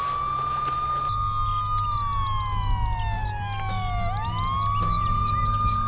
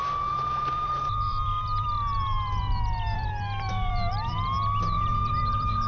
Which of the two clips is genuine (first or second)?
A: first